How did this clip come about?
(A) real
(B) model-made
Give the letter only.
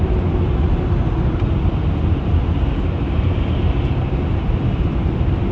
A